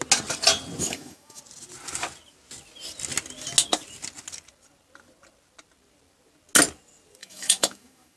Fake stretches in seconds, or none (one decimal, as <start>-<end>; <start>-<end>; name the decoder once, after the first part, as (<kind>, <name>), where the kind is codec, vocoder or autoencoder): 0.8-1.4 (autoencoder, DAC-VAE); 7.2-8.2